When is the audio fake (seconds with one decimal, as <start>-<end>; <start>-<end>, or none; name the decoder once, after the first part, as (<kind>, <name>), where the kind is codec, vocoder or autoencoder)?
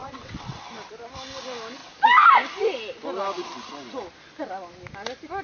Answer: 0.0-0.7 (vocoder, WaveNeXt)